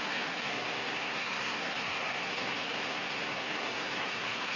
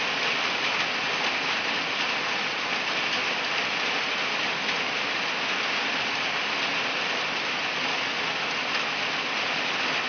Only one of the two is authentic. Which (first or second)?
second